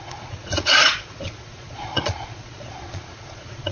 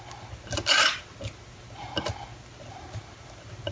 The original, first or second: second